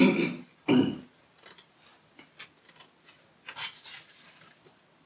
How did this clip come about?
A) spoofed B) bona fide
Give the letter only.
B